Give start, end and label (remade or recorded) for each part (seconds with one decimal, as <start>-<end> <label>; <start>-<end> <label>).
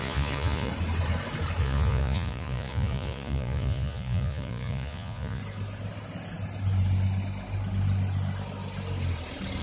0.0-0.7 remade; 0.7-1.6 recorded; 1.6-5.4 remade; 5.4-9.6 recorded